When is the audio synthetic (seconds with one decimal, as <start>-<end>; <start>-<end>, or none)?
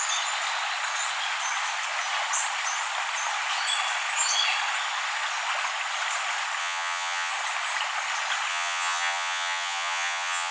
6.6-7.3; 8.5-10.5